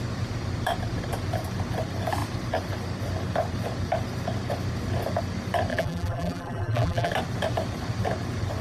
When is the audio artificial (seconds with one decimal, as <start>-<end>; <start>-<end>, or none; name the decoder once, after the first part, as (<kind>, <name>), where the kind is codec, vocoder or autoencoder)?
5.7-7.1 (vocoder, BigVGAN v2)

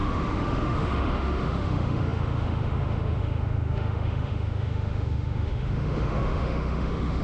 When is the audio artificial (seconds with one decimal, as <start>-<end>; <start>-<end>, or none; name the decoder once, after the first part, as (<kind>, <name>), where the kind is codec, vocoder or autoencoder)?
0.0-7.2 (autoencoder, DAC-VAE)

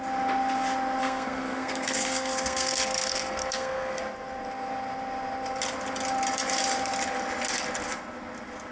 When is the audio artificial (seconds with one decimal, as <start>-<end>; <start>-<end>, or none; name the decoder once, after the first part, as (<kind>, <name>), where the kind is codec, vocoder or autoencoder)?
1.0-4.0 (codec, SNAC)

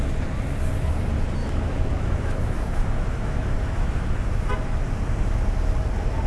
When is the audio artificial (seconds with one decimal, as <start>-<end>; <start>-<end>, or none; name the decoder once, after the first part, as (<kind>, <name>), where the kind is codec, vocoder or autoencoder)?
1.4-4.5 (autoencoder, DAC-VAE)

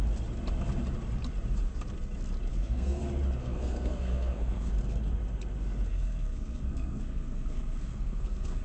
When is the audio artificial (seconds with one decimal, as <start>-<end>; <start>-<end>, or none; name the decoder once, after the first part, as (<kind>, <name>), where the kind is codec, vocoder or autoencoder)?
2.5-3.0 (codec, SNAC); 3.4-4.7; 5.9-8.6

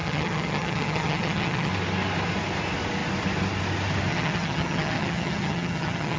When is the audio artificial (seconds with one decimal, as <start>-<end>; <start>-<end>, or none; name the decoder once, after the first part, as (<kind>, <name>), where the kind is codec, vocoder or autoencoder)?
0.0-1.7 (vocoder, HiFi-GAN); 4.1-6.2

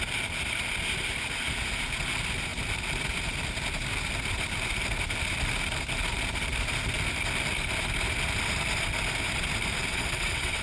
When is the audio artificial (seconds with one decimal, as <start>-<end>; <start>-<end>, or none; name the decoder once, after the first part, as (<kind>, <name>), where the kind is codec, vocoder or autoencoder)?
9.9-10.6 (vocoder, WaveNeXt)

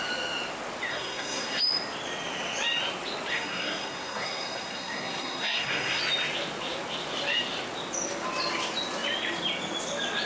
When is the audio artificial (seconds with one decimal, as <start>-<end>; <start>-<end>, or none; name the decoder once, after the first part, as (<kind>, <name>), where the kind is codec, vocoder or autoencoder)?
0.9-1.6 (codec, SNAC); 3.3-6.0